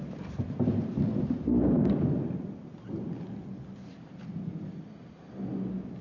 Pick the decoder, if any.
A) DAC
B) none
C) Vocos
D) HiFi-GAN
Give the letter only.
B